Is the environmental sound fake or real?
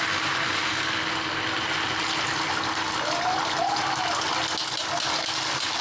real